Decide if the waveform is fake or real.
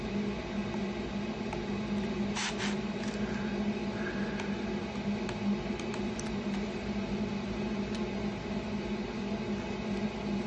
real